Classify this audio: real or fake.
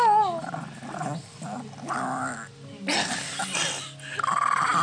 real